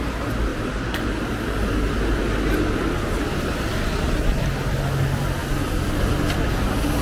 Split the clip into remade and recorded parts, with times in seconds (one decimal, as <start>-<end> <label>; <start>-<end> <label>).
0.0-7.0 recorded